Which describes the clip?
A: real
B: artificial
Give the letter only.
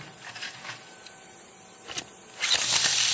B